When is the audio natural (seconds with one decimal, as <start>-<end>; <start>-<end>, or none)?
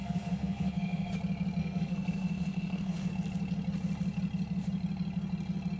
1.1-1.6; 3.1-5.8